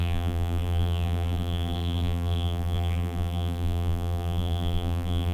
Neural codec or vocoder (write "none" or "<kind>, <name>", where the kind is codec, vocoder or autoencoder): vocoder, BigVGAN v2